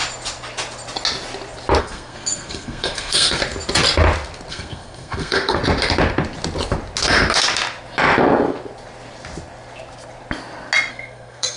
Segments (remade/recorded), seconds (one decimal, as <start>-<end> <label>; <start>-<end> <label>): 0.0-1.8 recorded; 1.8-3.4 remade; 3.4-4.5 recorded; 4.5-5.6 remade; 5.6-10.9 recorded; 10.9-11.6 remade